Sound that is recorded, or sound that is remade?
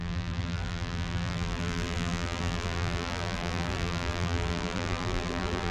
remade